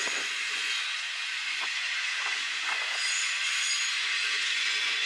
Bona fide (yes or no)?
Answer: no